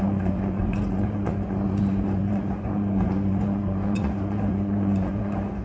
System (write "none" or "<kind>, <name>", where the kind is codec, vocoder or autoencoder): vocoder, Vocos